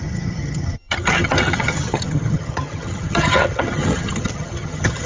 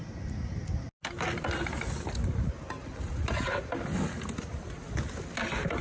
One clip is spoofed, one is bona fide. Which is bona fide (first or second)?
second